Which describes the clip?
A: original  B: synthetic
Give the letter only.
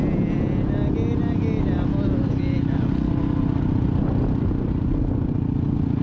A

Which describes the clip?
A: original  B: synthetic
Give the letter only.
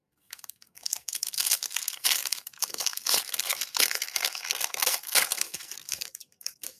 B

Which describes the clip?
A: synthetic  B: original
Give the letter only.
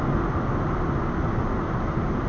B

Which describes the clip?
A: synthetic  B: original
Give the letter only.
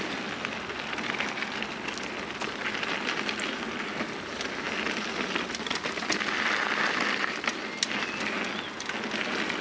B